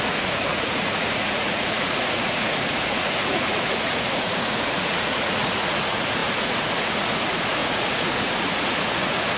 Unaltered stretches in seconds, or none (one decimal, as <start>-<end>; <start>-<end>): none